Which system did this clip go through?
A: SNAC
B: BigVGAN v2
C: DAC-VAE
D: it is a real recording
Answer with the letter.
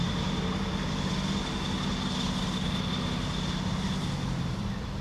D